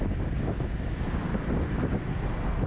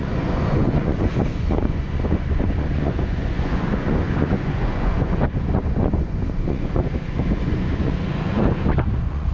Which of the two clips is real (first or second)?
first